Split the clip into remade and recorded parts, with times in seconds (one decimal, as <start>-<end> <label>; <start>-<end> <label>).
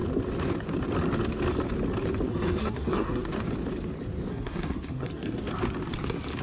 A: 0.0-2.3 recorded; 2.3-3.2 remade; 3.2-4.3 recorded; 4.3-5.4 remade; 5.4-6.4 recorded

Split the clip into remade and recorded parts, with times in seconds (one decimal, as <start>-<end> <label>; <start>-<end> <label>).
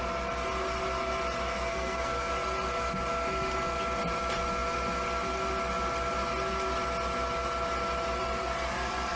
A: 0.0-1.7 recorded; 1.7-2.3 remade; 2.3-9.2 recorded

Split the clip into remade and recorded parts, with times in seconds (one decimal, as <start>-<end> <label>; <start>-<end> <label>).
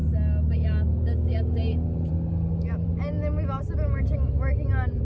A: 0.0-5.0 recorded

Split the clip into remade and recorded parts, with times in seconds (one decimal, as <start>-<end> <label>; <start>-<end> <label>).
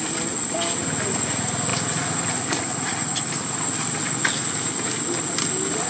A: 0.0-5.9 recorded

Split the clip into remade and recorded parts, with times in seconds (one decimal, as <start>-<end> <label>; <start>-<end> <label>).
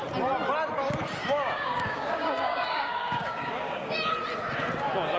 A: 0.0-1.2 recorded; 1.2-3.9 remade; 3.9-5.2 recorded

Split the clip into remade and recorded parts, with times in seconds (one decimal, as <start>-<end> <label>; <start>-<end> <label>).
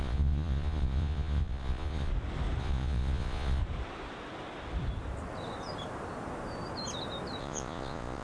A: 0.0-2.1 remade; 2.1-2.6 recorded; 2.6-3.6 remade; 3.6-7.4 recorded; 7.4-8.2 remade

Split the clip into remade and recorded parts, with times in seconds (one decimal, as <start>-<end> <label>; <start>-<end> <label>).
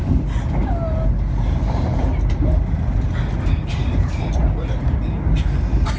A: 0.0-6.0 recorded